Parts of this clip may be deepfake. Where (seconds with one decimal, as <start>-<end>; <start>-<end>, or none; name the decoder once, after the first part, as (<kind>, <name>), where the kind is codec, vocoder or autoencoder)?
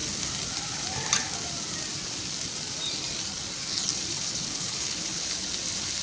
4.1-5.5 (codec, HILCodec)